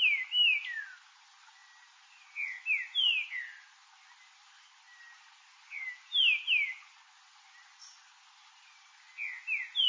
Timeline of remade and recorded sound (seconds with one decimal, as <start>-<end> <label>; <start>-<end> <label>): 0.0-9.9 recorded